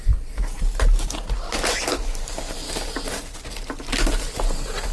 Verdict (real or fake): real